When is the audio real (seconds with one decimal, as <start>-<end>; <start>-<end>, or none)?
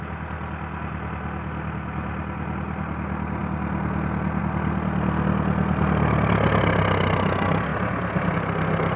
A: 0.0-9.0